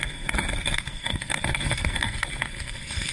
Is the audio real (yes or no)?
no